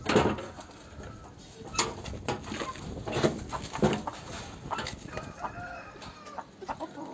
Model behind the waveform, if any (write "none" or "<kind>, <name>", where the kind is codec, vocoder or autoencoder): none